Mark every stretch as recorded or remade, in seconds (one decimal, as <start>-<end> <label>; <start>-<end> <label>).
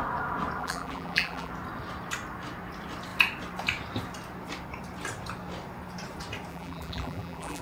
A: 0.0-0.6 recorded; 0.6-1.5 remade; 1.5-6.5 recorded; 6.5-7.6 remade